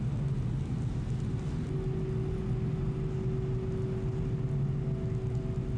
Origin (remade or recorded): recorded